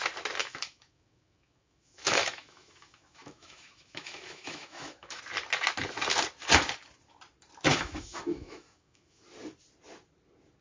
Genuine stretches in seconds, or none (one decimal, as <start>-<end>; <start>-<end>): 0.0-0.4; 5.2-7.7; 9.2-10.6